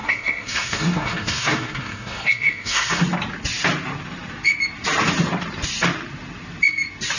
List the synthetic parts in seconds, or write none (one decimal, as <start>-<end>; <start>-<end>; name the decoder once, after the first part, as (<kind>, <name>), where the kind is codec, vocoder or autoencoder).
0.0-3.0 (codec, SNAC)